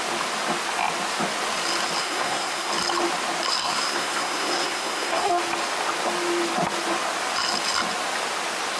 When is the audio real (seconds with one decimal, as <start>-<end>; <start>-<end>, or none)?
0.0-2.0; 2.7-3.6; 5.3-8.8